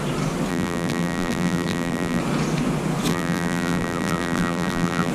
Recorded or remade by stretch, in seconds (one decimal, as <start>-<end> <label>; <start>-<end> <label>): 0.0-0.5 recorded; 0.5-2.2 remade; 2.2-3.1 recorded; 3.1-5.1 remade